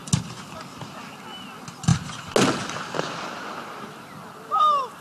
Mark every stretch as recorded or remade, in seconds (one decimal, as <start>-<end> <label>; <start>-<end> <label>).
0.0-5.0 recorded